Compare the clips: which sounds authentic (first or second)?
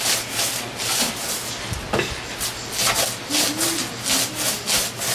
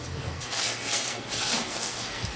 first